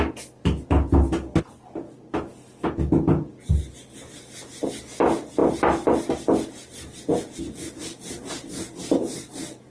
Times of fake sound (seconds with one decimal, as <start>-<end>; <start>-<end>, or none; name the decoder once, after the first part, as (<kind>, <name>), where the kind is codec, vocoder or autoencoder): none